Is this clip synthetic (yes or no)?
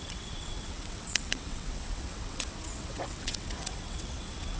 yes